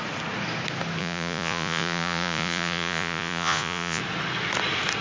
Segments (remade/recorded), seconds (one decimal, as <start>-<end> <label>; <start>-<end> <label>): 0.0-1.0 recorded; 1.0-4.0 remade; 4.0-5.0 recorded